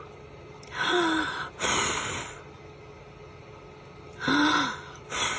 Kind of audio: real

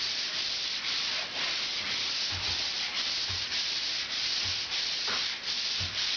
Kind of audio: real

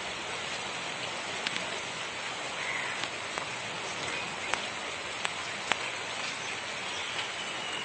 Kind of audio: fake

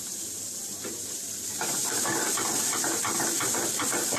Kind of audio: real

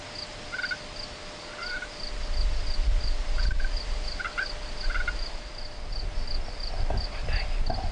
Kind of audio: real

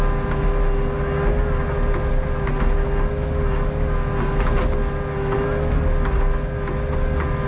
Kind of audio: real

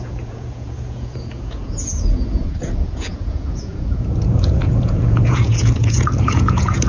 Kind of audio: fake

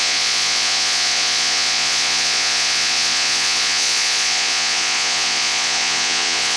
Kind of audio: fake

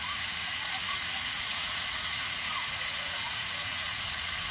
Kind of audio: fake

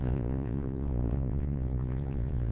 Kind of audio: fake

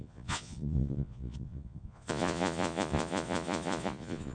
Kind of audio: fake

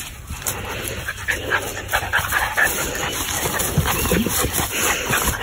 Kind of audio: real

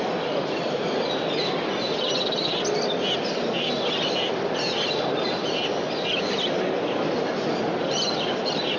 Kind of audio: real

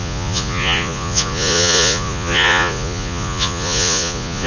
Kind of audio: fake